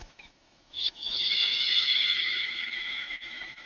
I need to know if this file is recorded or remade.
remade